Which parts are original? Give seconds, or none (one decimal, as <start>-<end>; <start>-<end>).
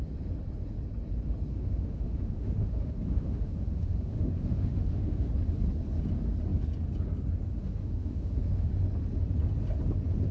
0.0-1.5; 5.3-7.5; 8.7-10.3